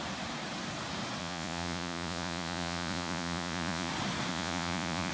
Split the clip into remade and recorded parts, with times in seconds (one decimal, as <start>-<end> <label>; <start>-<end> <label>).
0.0-1.2 recorded; 1.2-3.9 remade; 3.9-4.3 recorded; 4.3-5.1 remade